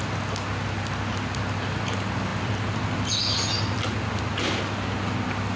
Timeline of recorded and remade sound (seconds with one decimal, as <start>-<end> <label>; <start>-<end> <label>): 0.0-5.6 recorded